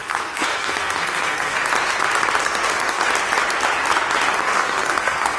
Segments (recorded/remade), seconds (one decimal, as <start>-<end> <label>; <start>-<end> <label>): 0.0-1.6 remade; 1.6-2.4 recorded; 2.4-3.0 remade; 3.0-4.4 recorded; 4.4-5.4 remade

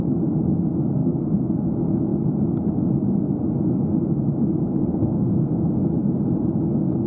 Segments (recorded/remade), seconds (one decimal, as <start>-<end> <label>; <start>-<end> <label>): 0.0-1.0 recorded; 1.0-1.7 remade; 1.7-4.8 recorded; 4.8-5.5 remade; 5.5-7.1 recorded

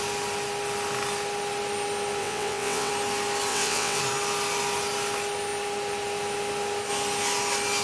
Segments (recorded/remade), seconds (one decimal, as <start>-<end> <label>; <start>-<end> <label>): 0.0-2.2 recorded; 2.2-2.9 remade; 2.9-3.5 recorded; 3.5-4.0 remade; 4.0-7.8 recorded

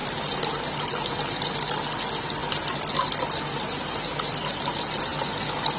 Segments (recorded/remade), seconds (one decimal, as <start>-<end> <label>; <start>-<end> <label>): 0.0-5.8 recorded